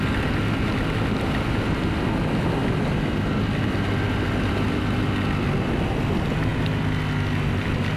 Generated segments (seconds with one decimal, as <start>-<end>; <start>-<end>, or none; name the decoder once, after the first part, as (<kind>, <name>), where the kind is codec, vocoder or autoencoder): none